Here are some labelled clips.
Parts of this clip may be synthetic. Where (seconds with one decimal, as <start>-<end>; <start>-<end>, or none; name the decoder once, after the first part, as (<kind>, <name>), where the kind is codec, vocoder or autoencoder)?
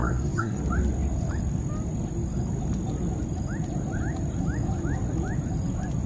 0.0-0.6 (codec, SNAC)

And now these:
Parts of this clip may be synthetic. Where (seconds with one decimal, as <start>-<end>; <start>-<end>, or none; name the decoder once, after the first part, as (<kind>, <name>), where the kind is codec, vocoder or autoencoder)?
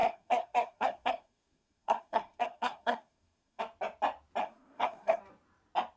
0.0-3.6 (codec, SNAC); 4.4-5.2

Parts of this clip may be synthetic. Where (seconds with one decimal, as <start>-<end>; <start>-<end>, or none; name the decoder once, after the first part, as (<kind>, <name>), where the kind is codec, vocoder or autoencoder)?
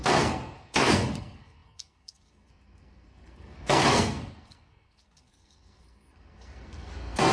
0.0-7.3 (codec, SNAC)